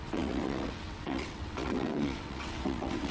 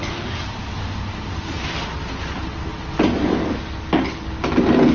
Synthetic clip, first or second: first